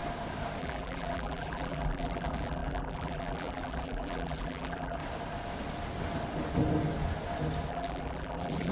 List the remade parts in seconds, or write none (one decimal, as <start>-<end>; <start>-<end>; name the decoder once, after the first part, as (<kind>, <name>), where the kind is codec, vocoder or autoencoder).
0.6-5.0 (vocoder, BigVGAN v2); 7.7-8.7